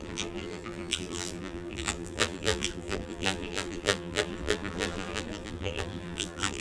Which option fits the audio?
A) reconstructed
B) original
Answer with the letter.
A